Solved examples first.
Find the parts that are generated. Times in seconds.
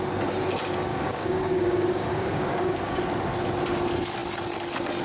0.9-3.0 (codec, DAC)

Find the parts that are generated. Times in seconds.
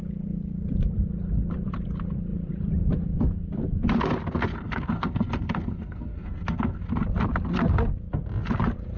4.5-6.8 (codec, SNAC)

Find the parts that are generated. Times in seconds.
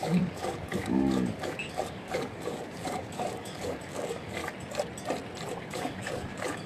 0.0-4.4 (codec, DAC); 5.6-6.7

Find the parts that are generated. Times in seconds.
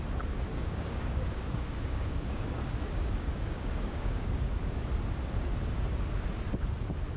0.5-4.8 (codec, DAC)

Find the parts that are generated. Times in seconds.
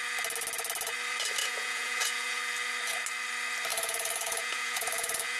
1.4-2.4 (vocoder, Vocos); 3.7-5.4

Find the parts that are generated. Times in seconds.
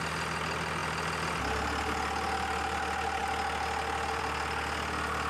none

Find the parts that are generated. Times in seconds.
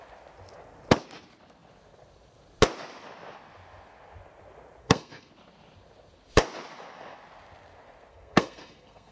4.8-5.3 (codec, SNAC); 8.1-9.1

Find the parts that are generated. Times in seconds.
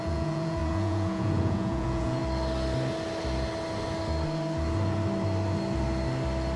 0.0-2.2 (vocoder, Vocos)